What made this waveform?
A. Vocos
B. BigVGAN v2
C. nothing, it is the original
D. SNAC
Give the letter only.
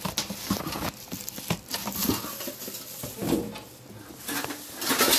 C